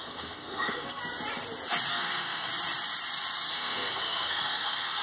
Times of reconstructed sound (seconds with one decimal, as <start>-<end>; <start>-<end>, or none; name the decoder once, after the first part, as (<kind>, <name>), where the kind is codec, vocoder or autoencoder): 0.0-1.0 (codec, SNAC); 1.9-2.5; 3.5-5.0